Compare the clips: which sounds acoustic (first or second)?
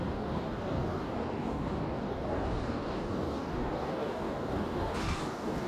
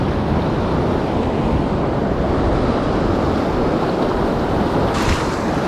second